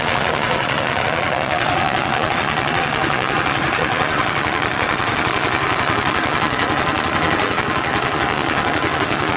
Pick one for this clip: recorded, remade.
remade